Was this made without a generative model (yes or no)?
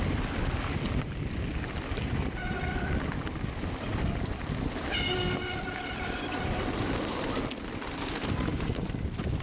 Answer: yes